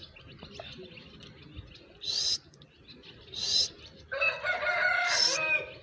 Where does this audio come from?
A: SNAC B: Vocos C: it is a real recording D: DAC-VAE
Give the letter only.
C